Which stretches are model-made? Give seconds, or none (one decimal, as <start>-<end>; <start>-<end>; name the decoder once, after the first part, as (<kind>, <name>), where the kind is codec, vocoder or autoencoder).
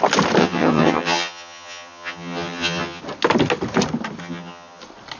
0.4-3.0 (vocoder, HiFi-GAN); 4.2-4.8